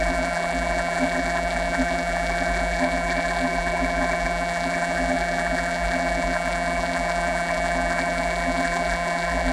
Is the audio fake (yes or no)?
yes